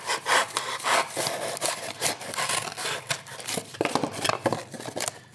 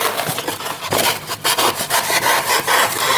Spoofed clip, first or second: second